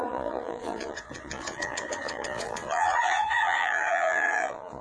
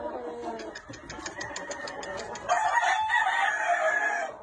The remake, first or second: first